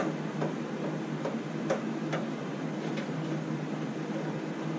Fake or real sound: real